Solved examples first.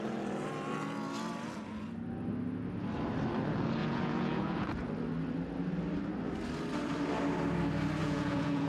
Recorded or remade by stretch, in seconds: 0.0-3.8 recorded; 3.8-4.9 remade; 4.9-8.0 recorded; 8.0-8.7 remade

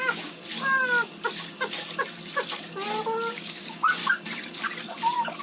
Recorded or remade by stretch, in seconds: 0.0-0.4 remade; 0.4-3.3 recorded; 3.3-4.0 remade; 4.0-5.4 recorded